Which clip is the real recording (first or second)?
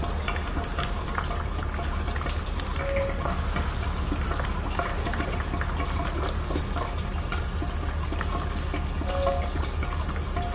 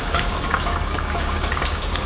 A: first